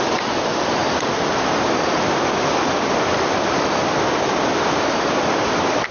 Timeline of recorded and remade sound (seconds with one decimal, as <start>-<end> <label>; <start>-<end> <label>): 0.0-5.9 recorded